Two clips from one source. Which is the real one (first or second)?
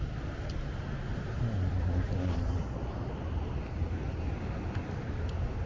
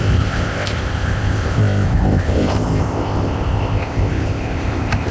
first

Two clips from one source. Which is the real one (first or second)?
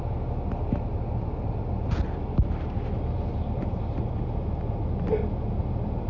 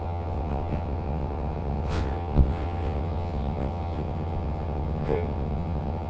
first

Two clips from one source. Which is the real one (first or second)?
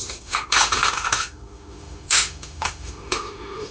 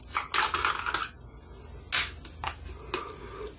second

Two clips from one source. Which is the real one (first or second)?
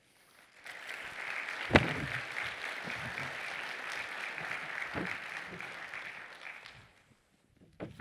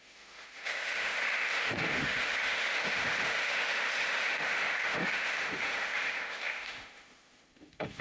first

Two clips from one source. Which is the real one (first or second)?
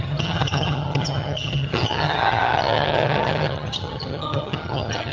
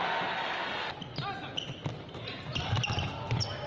second